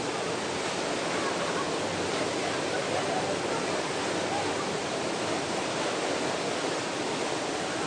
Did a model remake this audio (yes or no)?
no